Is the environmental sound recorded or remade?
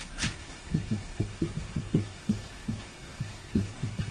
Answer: remade